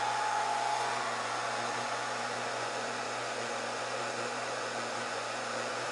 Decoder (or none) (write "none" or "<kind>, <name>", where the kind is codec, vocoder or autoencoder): vocoder, Vocos